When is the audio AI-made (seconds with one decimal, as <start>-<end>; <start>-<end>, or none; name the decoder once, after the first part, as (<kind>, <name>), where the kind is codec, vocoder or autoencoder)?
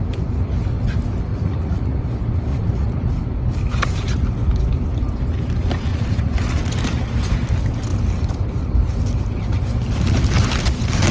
1.3-2.0 (vocoder, Vocos); 2.5-3.1; 5.9-6.6